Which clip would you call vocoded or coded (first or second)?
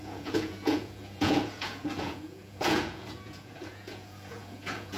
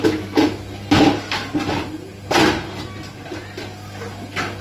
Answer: first